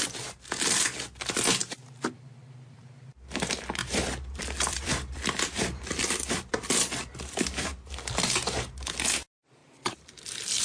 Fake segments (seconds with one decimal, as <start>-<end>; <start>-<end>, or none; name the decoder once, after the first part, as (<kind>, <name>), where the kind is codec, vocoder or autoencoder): 1.6-3.1 (vocoder, BigVGAN v2); 3.8-6.4; 9.6-10.1